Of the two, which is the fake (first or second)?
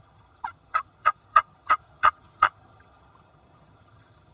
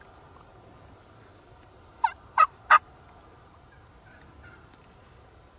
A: first